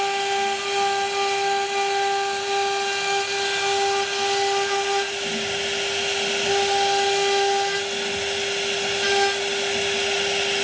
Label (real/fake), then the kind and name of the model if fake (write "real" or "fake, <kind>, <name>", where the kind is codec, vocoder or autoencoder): real